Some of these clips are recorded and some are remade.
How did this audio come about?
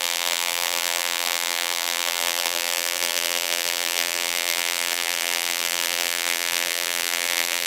remade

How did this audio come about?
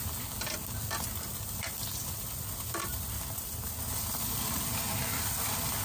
remade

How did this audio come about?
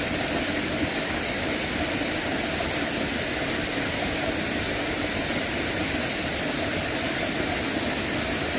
recorded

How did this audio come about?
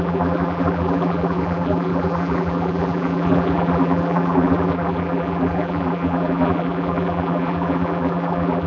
remade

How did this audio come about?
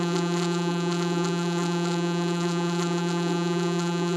remade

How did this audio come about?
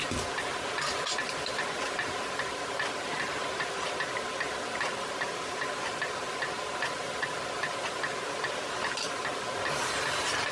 recorded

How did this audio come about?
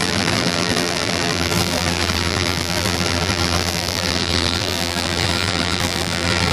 remade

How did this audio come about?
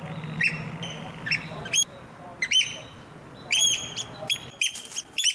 recorded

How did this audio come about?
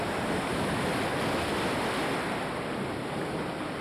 recorded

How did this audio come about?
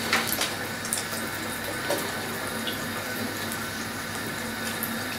recorded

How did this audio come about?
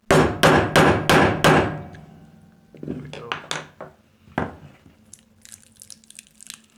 recorded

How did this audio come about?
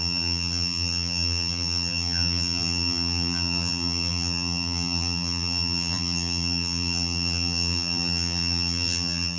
remade